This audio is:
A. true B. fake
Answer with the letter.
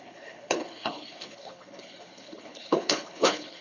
B